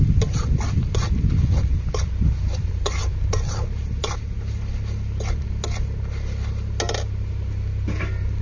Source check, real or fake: real